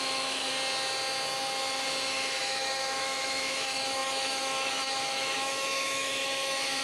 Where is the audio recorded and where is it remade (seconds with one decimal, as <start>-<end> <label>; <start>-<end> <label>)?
0.0-0.5 remade; 0.5-2.4 recorded; 2.4-6.8 remade